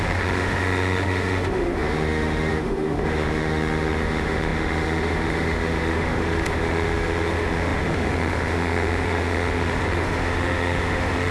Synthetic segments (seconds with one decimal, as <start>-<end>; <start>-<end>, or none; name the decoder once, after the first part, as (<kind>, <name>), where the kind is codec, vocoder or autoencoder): 0.0-11.3 (autoencoder, DAC-VAE)

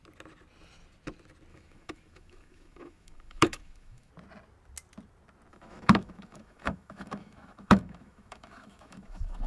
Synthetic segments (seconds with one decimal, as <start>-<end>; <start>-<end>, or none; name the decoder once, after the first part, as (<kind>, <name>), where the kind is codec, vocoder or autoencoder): 1.5-4.1 (autoencoder, DAC-VAE); 5.5-9.5